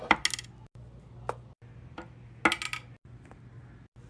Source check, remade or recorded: recorded